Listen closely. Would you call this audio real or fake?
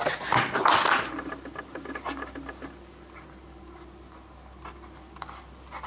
real